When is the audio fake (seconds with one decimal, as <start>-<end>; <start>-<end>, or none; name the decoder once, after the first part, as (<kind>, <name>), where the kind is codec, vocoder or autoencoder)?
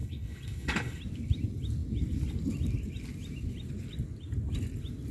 0.0-1.0 (codec, HILCodec)